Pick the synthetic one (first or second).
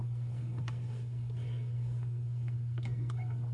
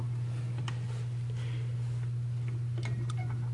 first